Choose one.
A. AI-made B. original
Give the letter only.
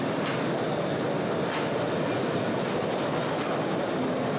B